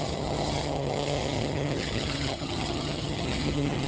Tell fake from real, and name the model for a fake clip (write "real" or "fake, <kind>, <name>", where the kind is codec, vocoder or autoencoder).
fake, vocoder, HiFi-GAN